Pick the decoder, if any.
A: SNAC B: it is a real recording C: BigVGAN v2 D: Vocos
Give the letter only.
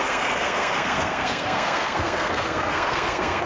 A